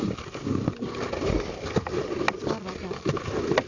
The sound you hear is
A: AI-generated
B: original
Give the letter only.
B